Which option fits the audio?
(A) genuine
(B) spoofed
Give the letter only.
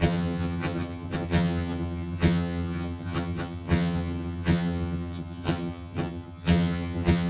B